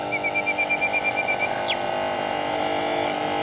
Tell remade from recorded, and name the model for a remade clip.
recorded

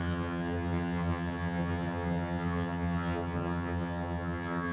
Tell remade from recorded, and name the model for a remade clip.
remade, vocoder, HiFi-GAN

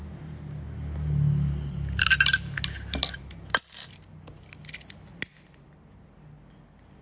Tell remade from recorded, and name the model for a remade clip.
recorded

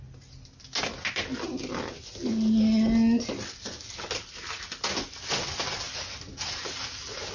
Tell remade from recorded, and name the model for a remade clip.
recorded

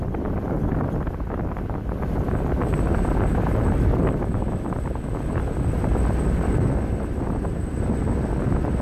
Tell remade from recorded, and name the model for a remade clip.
recorded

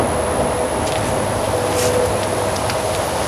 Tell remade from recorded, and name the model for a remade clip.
recorded